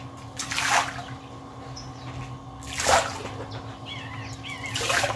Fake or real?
real